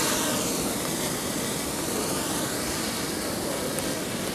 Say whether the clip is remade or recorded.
recorded